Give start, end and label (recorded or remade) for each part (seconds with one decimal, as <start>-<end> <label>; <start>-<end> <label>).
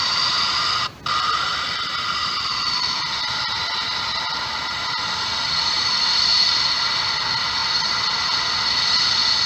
0.0-1.5 recorded; 1.5-2.3 remade; 2.3-9.5 recorded